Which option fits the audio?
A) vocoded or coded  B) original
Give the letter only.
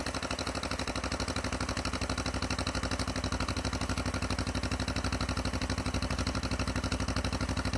B